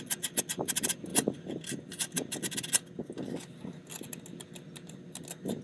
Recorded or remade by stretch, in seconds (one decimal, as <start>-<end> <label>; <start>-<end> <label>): 0.0-5.6 recorded